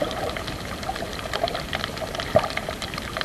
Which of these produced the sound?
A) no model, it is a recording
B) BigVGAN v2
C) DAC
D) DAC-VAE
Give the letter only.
B